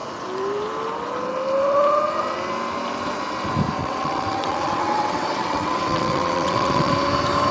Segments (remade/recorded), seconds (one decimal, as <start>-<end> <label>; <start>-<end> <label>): 0.0-3.8 recorded; 3.8-6.9 remade; 6.9-7.5 recorded